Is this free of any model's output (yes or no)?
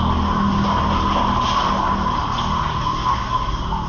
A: yes